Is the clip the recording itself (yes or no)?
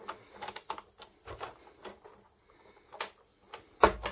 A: yes